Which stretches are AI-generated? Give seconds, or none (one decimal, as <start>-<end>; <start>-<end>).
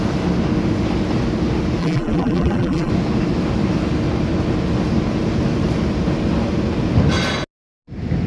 1.8-2.9